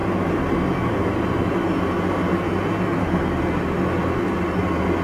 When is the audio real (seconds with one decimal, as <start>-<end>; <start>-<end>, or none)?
0.0-5.0